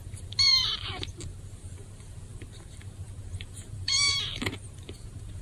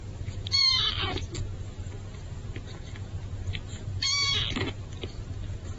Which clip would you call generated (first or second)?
first